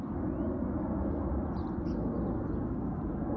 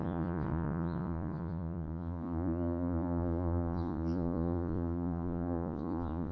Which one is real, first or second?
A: first